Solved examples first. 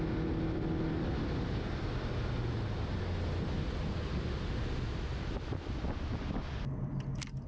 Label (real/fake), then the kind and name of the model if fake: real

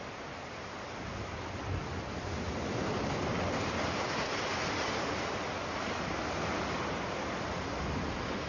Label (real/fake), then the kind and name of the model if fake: real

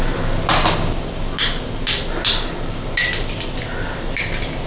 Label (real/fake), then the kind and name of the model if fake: real